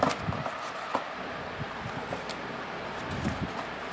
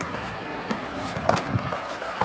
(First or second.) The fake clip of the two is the second